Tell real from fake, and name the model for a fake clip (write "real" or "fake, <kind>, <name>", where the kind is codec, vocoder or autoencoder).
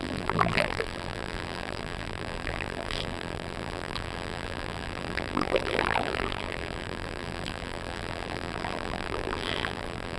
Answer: fake, vocoder, BigVGAN v2